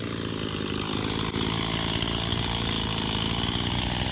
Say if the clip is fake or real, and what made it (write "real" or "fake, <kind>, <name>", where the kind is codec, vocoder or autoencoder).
real